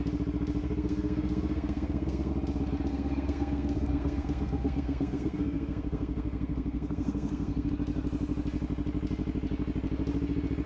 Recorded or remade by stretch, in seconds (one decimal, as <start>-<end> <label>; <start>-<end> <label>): 0.0-0.6 recorded; 0.6-2.3 remade; 2.3-2.9 recorded; 2.9-7.7 remade; 7.7-10.7 recorded